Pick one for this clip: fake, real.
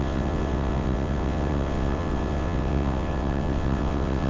fake